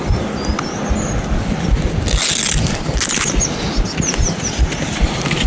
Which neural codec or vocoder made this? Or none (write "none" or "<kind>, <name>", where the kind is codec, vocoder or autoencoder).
none